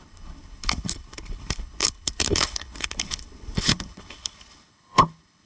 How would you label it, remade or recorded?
remade